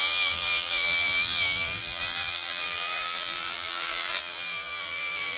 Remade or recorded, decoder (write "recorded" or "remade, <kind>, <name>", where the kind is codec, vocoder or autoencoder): remade, vocoder, BigVGAN v2